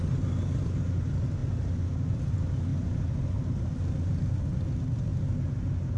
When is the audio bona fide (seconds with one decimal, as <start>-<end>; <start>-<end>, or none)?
0.0-6.0